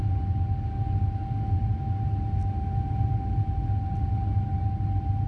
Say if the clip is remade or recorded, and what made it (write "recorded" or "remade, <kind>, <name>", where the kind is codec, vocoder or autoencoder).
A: recorded